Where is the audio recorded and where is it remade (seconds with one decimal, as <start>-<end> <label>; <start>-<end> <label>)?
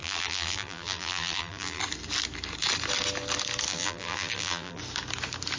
0.0-1.8 remade; 1.8-3.7 recorded; 3.7-4.8 remade; 4.8-5.6 recorded